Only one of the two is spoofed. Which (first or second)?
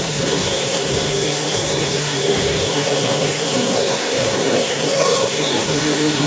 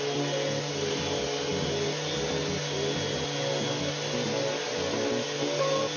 first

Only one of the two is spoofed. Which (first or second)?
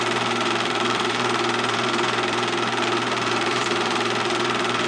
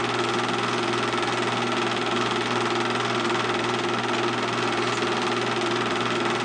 first